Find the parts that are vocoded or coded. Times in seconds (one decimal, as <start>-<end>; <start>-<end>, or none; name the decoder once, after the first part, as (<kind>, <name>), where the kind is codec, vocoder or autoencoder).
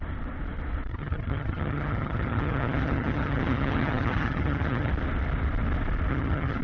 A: 0.9-4.9 (vocoder, HiFi-GAN); 6.1-6.6